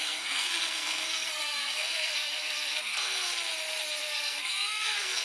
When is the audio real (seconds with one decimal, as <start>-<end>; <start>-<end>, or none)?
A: 3.3-4.0